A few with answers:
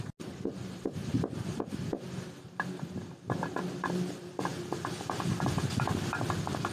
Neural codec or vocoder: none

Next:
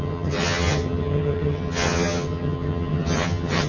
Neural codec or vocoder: vocoder, HiFi-GAN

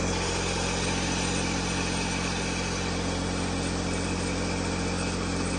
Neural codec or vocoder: none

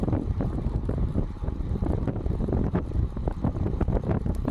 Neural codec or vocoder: vocoder, BigVGAN v2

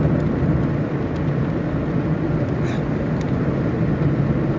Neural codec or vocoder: none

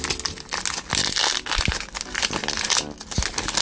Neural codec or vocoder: none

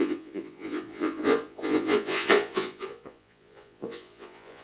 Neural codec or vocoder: vocoder, Vocos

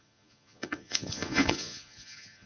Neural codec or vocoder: vocoder, Vocos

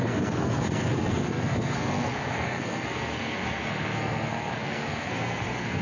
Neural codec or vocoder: codec, SNAC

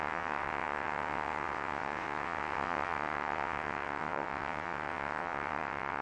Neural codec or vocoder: vocoder, WaveNeXt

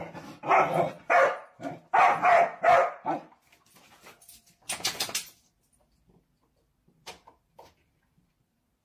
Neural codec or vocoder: none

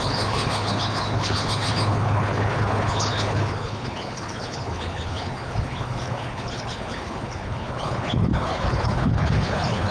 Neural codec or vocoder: codec, HILCodec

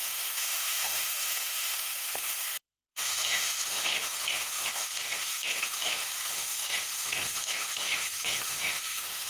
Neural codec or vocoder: autoencoder, DAC-VAE